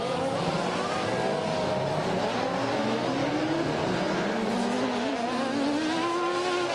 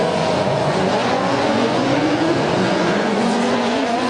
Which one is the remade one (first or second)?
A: second